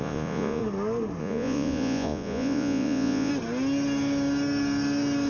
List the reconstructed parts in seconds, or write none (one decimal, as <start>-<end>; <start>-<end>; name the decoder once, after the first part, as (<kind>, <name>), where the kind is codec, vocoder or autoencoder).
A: 0.0-0.6 (vocoder, Vocos); 1.2-3.3